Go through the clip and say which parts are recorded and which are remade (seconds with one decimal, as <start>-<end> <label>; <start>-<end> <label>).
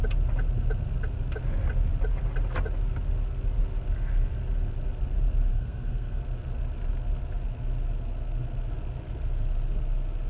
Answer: 0.0-5.5 recorded; 5.5-6.2 remade; 6.2-10.3 recorded